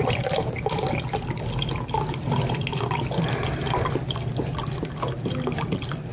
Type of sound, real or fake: real